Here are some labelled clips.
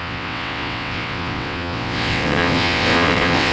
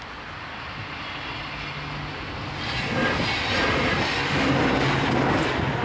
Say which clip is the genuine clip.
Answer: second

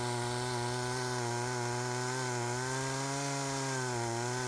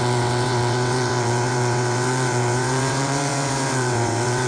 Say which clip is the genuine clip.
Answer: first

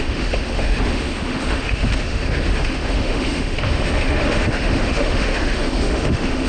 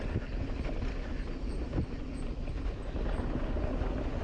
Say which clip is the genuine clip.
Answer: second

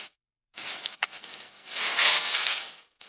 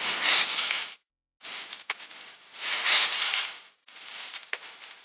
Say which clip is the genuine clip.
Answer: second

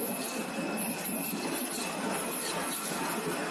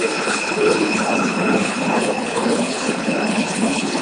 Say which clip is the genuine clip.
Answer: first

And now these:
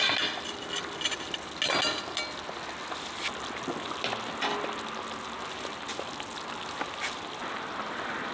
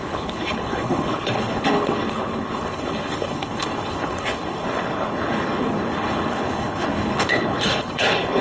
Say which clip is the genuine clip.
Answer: first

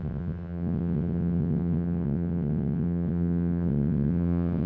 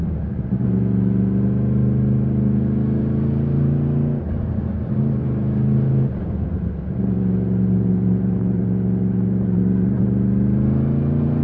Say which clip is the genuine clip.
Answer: second